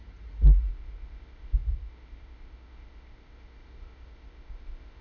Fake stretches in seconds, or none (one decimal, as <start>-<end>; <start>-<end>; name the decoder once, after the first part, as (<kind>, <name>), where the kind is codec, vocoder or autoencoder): 0.7-5.0 (codec, ZipCodec)